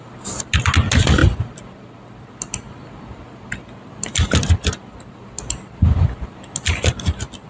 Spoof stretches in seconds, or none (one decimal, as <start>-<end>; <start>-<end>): none